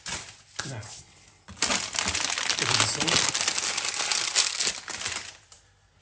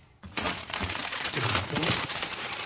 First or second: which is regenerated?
second